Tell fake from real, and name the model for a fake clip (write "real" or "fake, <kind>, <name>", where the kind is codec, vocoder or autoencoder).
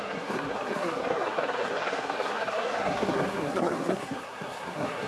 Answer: fake, codec, SNAC